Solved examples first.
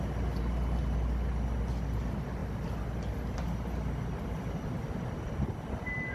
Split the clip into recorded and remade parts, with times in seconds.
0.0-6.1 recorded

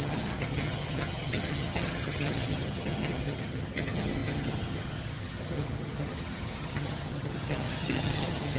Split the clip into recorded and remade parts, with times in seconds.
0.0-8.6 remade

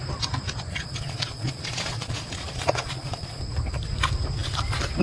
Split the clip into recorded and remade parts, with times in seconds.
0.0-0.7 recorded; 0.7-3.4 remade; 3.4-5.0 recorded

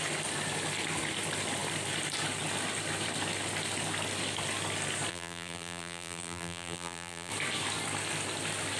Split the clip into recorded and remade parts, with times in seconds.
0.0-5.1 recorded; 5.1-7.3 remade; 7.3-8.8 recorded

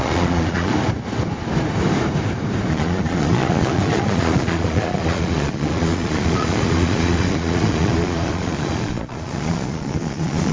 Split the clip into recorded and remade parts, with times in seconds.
0.0-0.7 remade; 0.7-2.7 recorded; 2.7-10.5 remade